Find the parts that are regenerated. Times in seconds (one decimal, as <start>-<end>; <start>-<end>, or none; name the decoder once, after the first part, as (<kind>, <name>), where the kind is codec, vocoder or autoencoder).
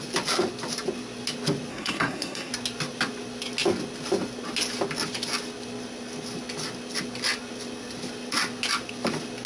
1.7-2.5 (codec, SNAC)